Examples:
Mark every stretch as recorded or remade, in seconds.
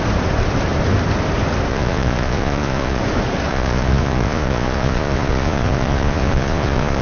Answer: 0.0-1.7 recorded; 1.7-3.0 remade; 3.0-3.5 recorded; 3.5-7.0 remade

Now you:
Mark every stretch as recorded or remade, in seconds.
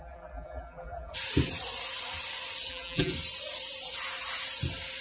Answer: 0.0-1.1 remade; 1.1-2.7 recorded; 2.7-3.1 remade; 3.1-5.0 recorded